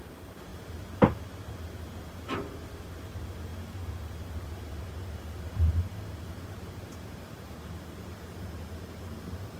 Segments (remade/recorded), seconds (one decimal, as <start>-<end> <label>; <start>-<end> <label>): 0.0-9.6 recorded